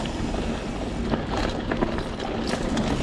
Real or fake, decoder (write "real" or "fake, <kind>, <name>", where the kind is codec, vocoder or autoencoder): real